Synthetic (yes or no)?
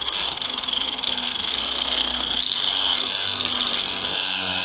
yes